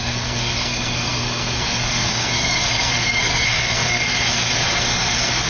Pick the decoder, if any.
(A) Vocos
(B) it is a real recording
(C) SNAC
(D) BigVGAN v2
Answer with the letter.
C